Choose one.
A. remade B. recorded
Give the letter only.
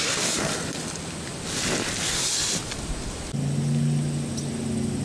B